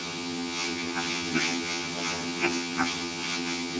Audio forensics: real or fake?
fake